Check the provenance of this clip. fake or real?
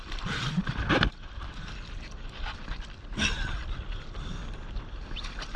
fake